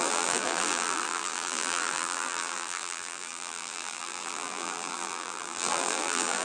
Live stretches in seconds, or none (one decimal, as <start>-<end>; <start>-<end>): none